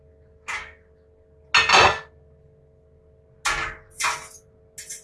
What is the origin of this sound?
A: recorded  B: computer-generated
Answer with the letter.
A